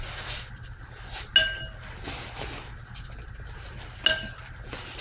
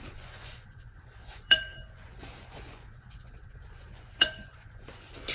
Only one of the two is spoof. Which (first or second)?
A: second